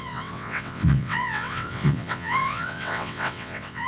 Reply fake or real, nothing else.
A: fake